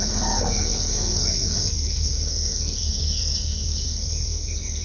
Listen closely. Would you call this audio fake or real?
fake